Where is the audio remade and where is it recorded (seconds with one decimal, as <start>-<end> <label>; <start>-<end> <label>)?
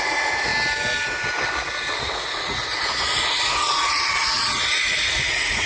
0.0-0.5 remade; 0.5-2.0 recorded; 2.0-5.7 remade